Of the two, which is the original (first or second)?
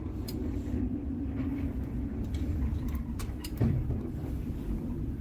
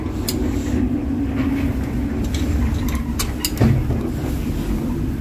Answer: second